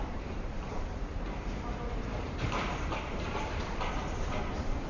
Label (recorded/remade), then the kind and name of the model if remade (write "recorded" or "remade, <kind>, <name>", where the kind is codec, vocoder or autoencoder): remade, vocoder, BigVGAN v2